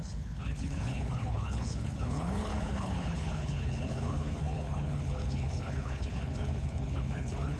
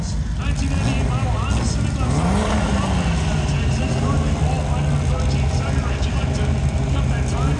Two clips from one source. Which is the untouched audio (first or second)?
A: second